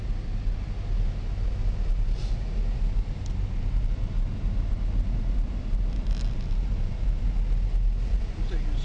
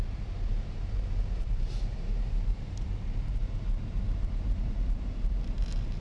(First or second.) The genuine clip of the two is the first